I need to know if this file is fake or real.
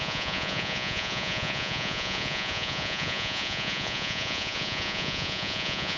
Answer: fake